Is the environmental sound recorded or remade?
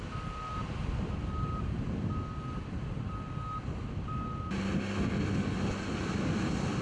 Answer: recorded